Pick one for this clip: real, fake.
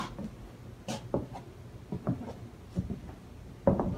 real